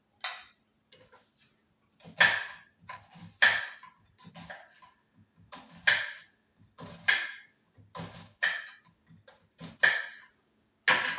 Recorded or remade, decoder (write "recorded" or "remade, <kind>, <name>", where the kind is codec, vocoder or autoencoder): recorded